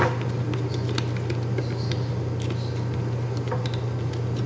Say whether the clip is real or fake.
real